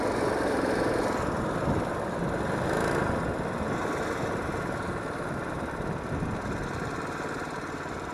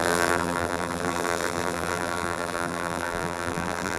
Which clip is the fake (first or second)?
second